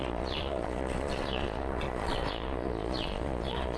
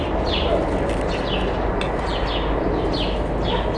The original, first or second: second